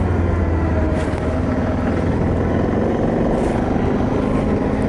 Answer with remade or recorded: recorded